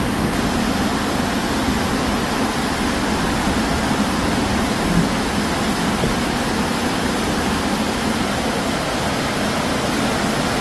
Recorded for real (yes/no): yes